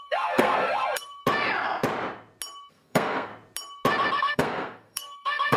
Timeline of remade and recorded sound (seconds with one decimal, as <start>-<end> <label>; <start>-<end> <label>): 0.0-1.2 remade; 1.2-2.7 recorded; 2.7-3.3 remade; 3.3-4.2 recorded; 4.2-5.6 remade